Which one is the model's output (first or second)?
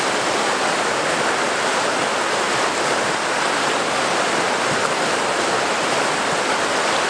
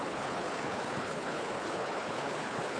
second